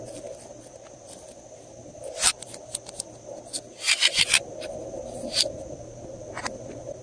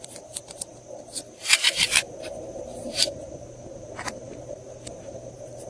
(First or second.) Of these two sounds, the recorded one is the first